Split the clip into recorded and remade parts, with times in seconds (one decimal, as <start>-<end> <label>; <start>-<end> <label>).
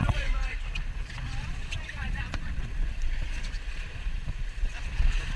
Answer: 0.0-5.4 remade